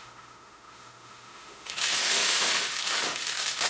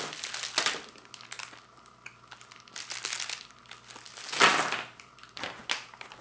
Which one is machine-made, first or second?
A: first